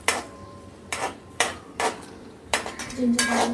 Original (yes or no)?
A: no